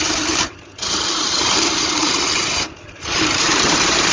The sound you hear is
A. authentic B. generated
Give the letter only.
B